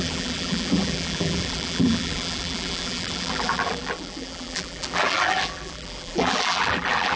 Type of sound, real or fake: fake